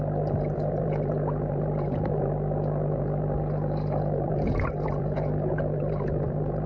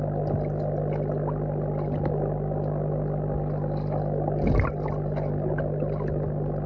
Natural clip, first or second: second